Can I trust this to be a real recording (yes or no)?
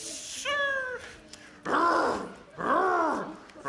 yes